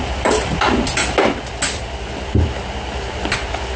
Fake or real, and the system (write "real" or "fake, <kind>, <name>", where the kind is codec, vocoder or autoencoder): real